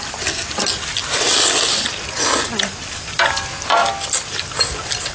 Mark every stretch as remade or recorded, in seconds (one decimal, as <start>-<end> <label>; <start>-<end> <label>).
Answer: 0.0-5.1 recorded